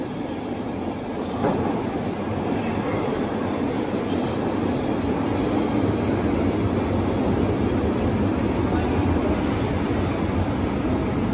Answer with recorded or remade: recorded